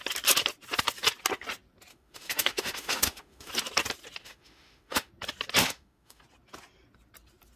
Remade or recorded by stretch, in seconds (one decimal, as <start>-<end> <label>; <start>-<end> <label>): 0.0-1.9 recorded; 1.9-3.5 remade; 3.5-4.2 recorded; 4.2-5.1 remade; 5.1-5.6 recorded; 5.6-6.2 remade; 6.2-7.6 recorded